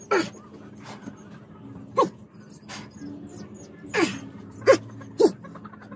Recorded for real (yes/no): yes